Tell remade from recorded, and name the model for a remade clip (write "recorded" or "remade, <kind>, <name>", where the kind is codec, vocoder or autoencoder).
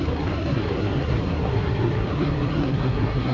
remade, codec, SNAC